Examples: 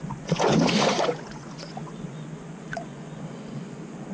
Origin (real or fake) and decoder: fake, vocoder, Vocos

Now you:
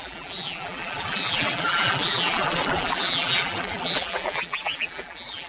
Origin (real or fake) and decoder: fake, vocoder, BigVGAN v2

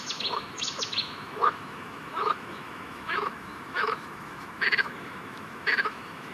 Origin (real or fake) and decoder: fake, autoencoder, DAC-VAE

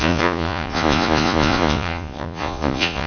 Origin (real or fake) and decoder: fake, vocoder, Vocos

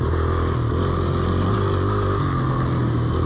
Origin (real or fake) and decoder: real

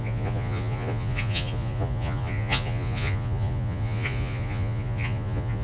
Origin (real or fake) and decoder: fake, vocoder, Vocos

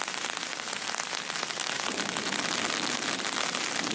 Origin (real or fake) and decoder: fake, vocoder, BigVGAN v2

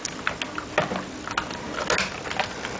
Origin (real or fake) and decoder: real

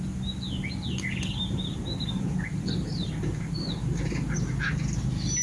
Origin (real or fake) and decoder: real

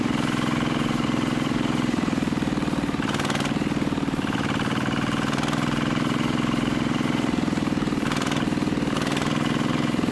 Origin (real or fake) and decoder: fake, vocoder, BigVGAN v2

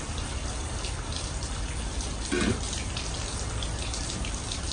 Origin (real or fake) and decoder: real